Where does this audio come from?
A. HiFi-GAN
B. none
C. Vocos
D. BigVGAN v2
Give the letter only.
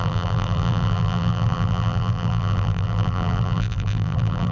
D